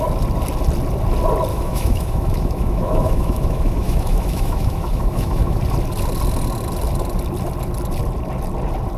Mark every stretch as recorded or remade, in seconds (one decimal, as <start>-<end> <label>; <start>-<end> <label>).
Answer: 0.0-1.5 recorded; 1.5-5.6 remade; 5.6-9.0 recorded